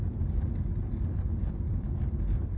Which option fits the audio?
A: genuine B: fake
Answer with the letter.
A